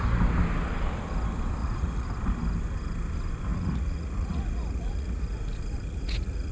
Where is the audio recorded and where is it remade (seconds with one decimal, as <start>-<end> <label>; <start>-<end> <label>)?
0.0-1.6 recorded; 1.6-2.1 remade; 2.1-3.5 recorded; 3.5-6.5 remade